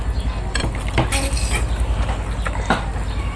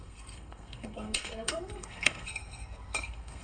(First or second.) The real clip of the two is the first